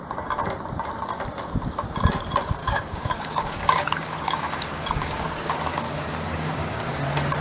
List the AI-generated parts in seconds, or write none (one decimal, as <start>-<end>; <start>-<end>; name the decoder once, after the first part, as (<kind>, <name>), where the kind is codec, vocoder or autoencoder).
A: 2.6-7.0 (codec, DAC)